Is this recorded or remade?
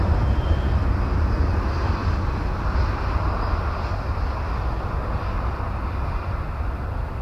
recorded